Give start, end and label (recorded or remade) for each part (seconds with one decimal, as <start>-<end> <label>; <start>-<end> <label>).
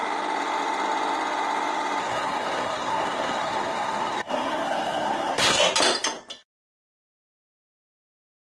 0.0-2.0 recorded; 2.0-5.6 remade; 5.6-8.6 recorded